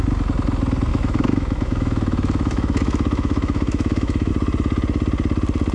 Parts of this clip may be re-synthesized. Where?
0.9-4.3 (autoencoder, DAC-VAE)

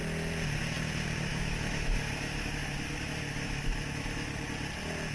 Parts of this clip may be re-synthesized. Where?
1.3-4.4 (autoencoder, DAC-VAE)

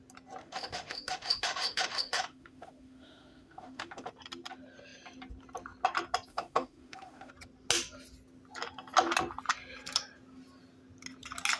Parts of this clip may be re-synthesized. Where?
0.4-4.1 (autoencoder, DAC-VAE); 6.3-7.3

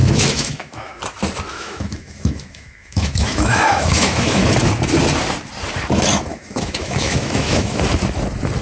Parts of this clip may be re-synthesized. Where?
0.0-1.0 (autoencoder, DAC-VAE); 1.5-4.4; 6.3-7.8

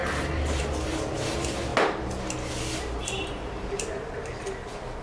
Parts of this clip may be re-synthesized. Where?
none

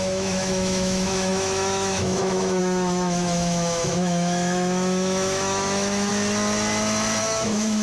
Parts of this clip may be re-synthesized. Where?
0.0-6.1 (autoencoder, DAC-VAE); 7.2-7.8

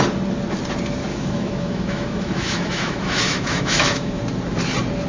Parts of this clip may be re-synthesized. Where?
1.1-4.2 (autoencoder, DAC-VAE)